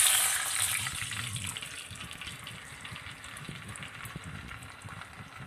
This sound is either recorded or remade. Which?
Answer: recorded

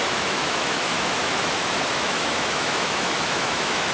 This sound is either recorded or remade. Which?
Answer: remade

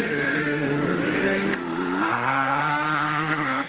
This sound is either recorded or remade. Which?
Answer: remade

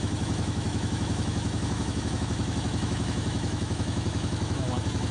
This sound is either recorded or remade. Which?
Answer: remade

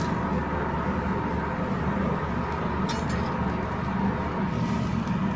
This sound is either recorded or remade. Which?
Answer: recorded